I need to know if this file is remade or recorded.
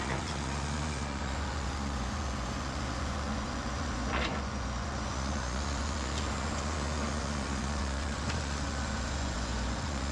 remade